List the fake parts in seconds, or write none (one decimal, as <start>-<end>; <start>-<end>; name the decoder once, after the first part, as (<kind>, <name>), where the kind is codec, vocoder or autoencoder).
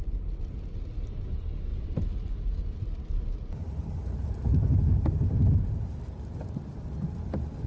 none